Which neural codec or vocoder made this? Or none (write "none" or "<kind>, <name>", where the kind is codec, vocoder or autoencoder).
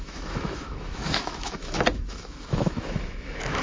autoencoder, DAC-VAE